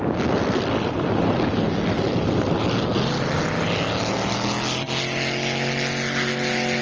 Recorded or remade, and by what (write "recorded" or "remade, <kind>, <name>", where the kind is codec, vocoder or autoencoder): recorded